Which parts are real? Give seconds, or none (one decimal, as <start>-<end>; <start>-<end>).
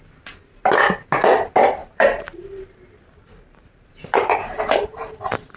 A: 0.0-1.8